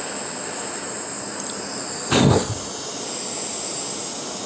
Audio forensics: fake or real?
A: real